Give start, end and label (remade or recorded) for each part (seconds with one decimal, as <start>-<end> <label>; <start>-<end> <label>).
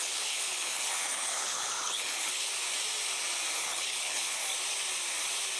0.0-2.5 remade; 2.5-3.6 recorded; 3.6-4.4 remade; 4.4-5.6 recorded